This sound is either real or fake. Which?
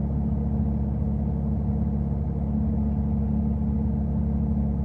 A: real